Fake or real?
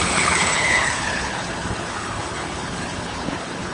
fake